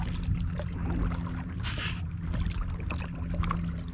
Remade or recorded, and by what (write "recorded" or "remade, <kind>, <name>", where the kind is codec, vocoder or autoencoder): recorded